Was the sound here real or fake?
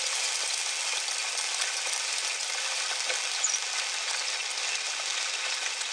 real